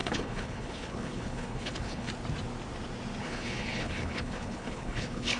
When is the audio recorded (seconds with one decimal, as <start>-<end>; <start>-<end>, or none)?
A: 2.1-3.2